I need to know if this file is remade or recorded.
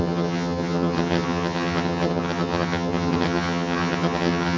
remade